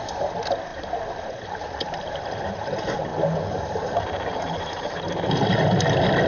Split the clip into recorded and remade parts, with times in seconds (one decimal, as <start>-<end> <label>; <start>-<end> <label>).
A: 0.0-6.3 recorded